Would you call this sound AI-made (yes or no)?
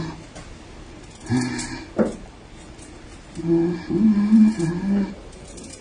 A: no